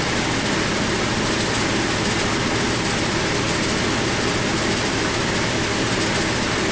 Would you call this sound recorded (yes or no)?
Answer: yes